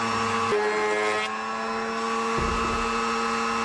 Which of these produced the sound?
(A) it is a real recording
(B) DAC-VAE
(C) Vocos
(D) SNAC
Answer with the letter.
A